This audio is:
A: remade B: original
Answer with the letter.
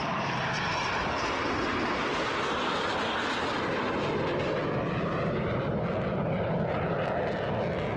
B